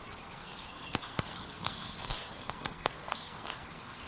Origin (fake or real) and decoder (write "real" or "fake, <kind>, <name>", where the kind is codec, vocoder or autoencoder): fake, codec, SNAC